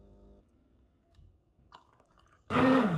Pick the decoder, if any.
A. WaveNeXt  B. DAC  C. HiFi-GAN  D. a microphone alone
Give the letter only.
B